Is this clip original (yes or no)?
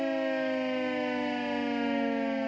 yes